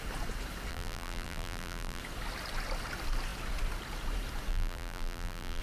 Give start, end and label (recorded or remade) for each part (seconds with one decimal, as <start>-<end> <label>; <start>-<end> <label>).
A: 0.0-0.7 recorded; 0.7-2.0 remade; 2.0-4.5 recorded; 4.5-5.6 remade